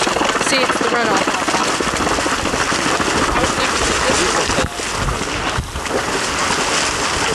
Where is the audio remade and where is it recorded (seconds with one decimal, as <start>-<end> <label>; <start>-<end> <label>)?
0.0-7.3 recorded